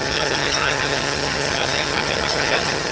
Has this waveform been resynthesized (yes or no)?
yes